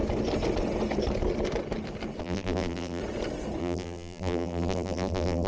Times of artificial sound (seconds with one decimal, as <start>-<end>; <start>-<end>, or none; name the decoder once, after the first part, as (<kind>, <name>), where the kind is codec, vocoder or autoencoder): 2.2-3.0 (vocoder, BigVGAN v2); 3.6-5.5